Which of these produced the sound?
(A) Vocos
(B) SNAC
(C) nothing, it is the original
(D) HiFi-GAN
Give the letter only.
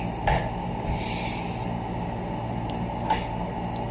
C